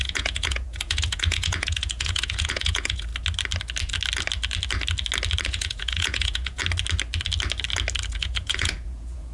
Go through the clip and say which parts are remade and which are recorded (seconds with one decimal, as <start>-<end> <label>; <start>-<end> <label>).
0.0-3.1 remade; 3.1-5.4 recorded; 5.4-6.6 remade; 6.6-8.1 recorded; 8.1-9.3 remade